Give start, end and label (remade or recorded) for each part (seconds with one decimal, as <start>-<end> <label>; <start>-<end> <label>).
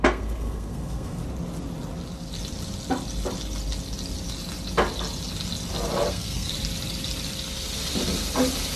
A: 0.0-1.2 remade; 1.2-6.1 recorded; 6.1-6.5 remade; 6.5-8.8 recorded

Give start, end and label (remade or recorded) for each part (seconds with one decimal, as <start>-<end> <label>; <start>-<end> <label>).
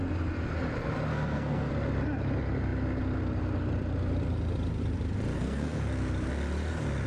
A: 0.0-1.1 recorded; 1.1-1.7 remade; 1.7-5.3 recorded; 5.3-5.9 remade; 5.9-7.1 recorded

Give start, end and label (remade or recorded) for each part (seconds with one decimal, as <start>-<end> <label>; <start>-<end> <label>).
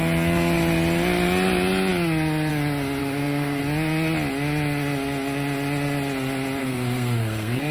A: 0.0-3.0 recorded; 3.0-3.6 remade; 3.6-6.6 recorded; 6.6-7.7 remade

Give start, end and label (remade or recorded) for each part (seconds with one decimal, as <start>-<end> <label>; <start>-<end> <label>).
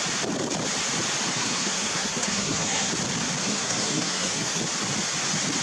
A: 0.0-1.3 recorded; 1.3-2.9 remade; 2.9-3.4 recorded; 3.4-4.6 remade; 4.6-5.6 recorded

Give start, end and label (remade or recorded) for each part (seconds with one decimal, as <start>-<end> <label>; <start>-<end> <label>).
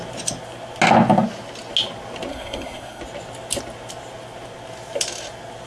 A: 0.0-2.3 recorded; 2.3-3.0 remade; 3.0-5.7 recorded